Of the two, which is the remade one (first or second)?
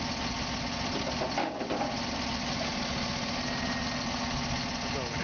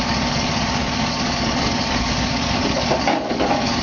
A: second